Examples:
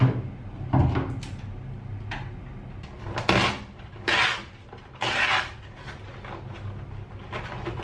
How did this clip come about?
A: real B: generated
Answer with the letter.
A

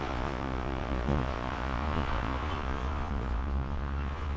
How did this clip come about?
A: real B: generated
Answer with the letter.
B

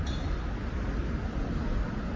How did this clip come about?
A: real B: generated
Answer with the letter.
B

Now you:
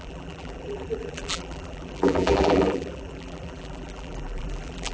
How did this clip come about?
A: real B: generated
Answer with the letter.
B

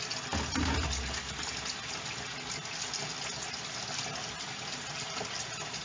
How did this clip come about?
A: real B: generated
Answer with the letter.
A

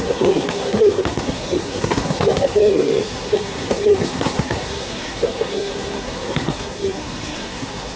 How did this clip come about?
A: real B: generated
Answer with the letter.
B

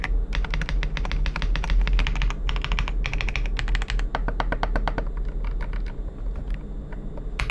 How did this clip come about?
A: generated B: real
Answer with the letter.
B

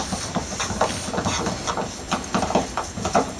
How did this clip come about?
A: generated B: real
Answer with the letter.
B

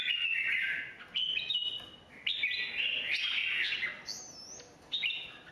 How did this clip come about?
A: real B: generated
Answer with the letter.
A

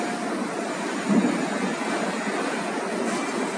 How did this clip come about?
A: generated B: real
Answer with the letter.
B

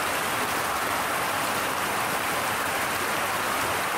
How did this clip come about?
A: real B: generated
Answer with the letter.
A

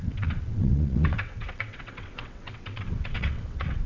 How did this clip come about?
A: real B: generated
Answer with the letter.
B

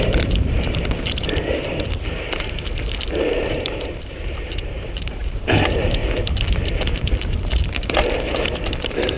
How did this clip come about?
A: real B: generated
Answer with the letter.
B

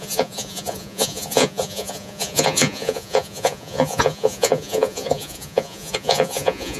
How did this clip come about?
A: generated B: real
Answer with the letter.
A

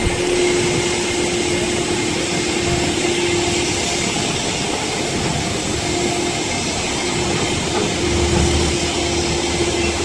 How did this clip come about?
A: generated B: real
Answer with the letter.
B